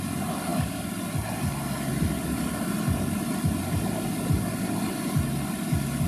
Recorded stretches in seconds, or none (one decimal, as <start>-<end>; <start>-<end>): 0.0-6.1

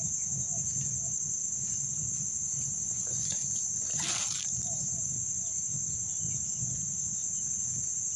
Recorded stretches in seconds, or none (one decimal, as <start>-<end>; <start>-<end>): 0.0-1.4; 6.2-8.2